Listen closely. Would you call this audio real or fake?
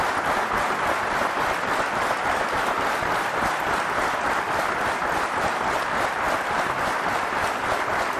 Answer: real